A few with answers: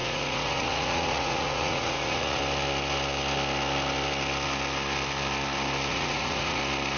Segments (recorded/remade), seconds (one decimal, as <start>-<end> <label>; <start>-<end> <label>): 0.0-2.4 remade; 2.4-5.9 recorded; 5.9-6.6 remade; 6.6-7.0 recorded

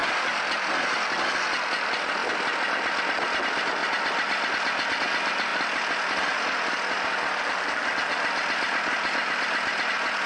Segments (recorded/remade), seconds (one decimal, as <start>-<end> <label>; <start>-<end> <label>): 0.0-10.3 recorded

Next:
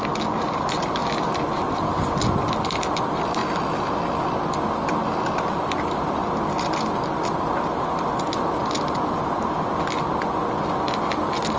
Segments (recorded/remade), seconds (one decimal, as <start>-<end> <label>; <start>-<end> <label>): 0.0-11.6 recorded